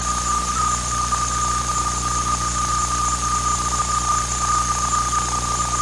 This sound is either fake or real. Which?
real